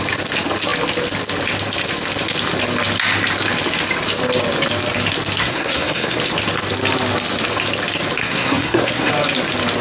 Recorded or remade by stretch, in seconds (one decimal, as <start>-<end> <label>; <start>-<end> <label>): 0.0-5.4 recorded; 5.4-6.2 remade; 6.2-8.2 recorded; 8.2-9.1 remade; 9.1-9.8 recorded